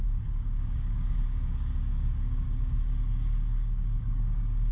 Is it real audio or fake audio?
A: fake